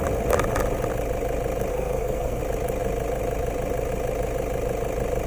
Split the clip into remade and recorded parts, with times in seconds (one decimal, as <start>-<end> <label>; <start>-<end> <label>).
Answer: 0.0-1.7 recorded; 1.7-2.4 remade; 2.4-5.3 recorded